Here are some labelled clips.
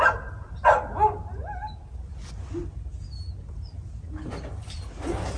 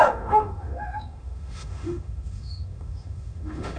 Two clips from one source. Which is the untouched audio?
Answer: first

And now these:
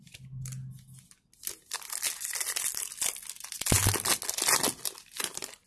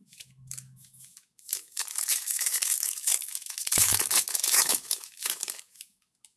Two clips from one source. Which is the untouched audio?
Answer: first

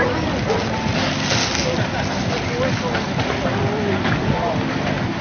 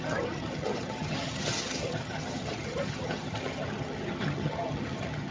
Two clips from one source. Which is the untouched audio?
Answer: first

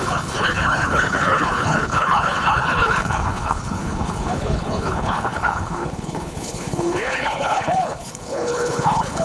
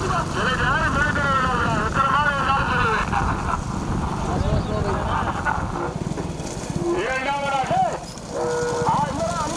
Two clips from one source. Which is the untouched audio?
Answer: second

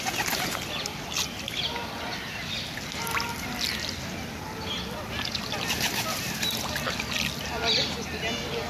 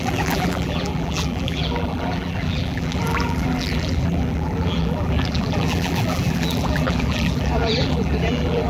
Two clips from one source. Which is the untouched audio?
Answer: first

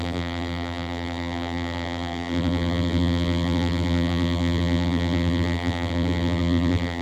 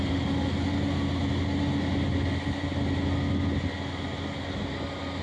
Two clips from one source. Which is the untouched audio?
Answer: second